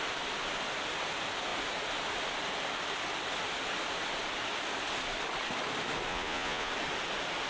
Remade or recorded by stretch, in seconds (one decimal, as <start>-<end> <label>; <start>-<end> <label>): 0.0-6.1 recorded; 6.1-6.7 remade; 6.7-7.5 recorded